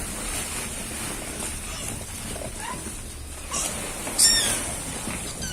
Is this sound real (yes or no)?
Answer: yes